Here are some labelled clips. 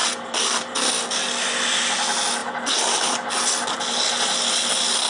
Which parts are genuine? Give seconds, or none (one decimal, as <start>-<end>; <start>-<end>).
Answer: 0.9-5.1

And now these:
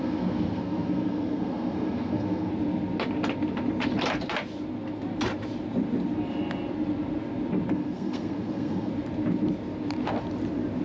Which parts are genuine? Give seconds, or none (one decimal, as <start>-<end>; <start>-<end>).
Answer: 2.5-7.7; 8.9-10.8

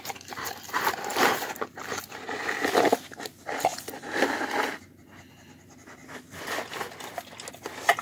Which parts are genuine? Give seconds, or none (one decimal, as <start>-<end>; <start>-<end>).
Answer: 0.0-8.0